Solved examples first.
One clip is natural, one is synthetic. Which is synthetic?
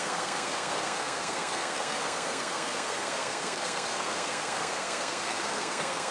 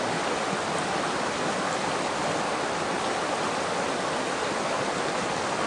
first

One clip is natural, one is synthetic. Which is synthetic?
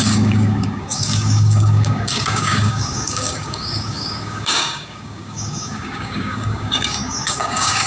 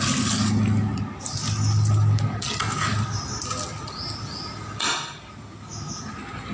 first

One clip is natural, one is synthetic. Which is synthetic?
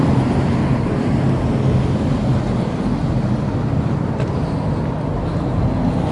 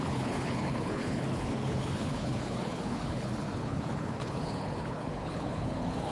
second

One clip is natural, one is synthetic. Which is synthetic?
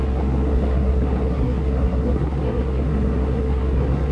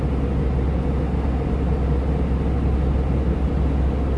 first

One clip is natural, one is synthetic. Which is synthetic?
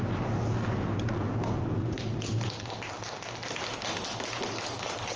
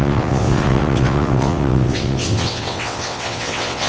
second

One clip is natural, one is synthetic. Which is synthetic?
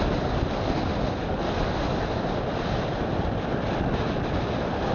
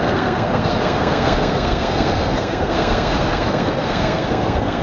second